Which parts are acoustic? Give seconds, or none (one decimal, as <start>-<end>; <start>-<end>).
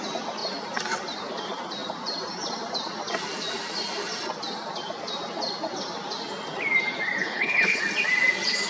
0.0-7.2; 7.8-8.7